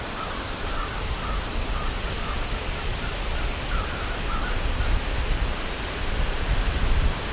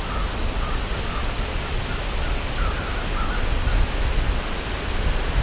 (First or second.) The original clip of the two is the second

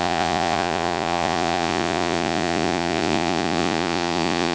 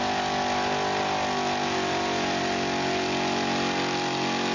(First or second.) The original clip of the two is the second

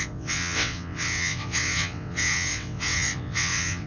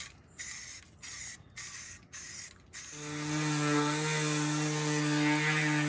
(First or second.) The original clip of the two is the second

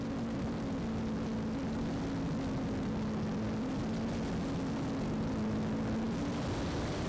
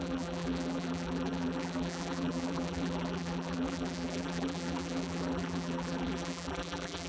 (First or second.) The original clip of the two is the first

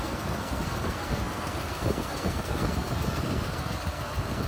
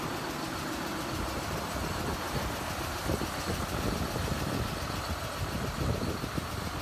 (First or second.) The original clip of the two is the second